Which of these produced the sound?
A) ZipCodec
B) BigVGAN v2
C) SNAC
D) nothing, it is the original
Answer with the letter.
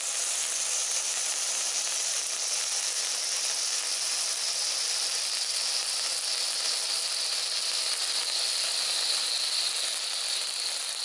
D